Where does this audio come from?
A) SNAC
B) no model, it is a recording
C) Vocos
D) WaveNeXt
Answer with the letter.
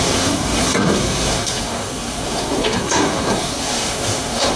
A